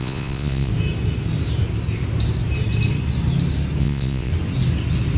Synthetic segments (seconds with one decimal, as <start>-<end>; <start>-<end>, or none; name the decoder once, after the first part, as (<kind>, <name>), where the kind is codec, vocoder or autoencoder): 0.0-0.7 (vocoder, Vocos); 3.8-4.3